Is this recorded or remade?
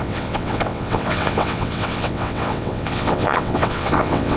remade